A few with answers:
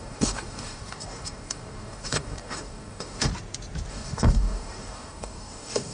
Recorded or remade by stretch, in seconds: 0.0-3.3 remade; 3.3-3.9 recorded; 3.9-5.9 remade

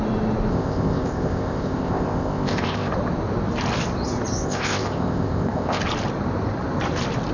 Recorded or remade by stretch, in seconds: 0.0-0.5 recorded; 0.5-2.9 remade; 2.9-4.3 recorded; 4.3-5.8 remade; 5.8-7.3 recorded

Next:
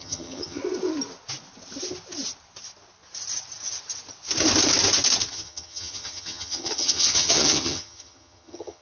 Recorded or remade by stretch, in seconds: 0.0-0.6 remade; 0.6-5.3 recorded; 5.3-8.8 remade

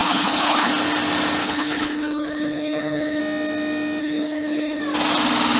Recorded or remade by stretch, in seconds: 0.0-0.7 remade; 0.7-1.4 recorded; 1.4-3.2 remade; 3.2-4.0 recorded; 4.0-4.8 remade; 4.8-5.6 recorded

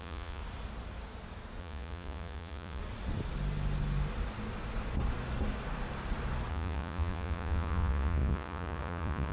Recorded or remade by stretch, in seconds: 0.0-0.4 remade; 0.4-1.6 recorded; 1.6-2.8 remade; 2.8-6.5 recorded; 6.5-9.3 remade